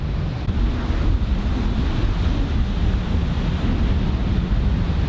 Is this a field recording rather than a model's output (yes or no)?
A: yes